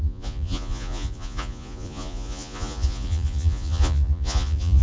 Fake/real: fake